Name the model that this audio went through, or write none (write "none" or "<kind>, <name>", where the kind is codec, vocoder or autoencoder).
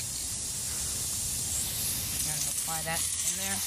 none